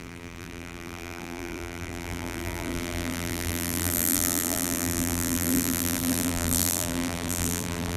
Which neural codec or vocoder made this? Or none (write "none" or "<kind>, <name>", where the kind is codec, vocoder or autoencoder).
vocoder, BigVGAN v2